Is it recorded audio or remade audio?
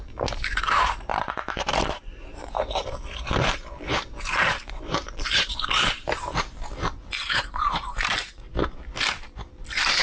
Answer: remade